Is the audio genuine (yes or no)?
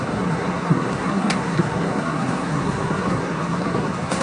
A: no